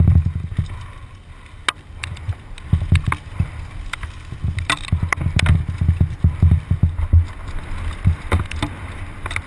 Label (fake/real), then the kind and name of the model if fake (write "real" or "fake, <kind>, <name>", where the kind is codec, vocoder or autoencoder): real